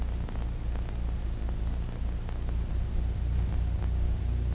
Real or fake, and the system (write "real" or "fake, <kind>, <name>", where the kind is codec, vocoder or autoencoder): real